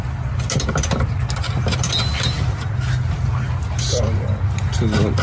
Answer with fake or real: real